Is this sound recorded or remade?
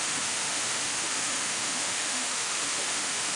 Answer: remade